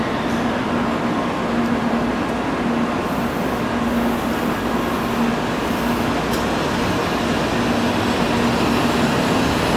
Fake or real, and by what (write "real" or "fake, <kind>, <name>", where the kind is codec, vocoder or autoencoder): real